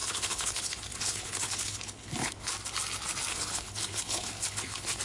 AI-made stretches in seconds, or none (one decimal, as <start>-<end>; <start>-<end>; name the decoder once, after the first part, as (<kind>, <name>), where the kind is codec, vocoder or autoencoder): 0.0-2.5 (codec, HILCodec); 3.3-5.0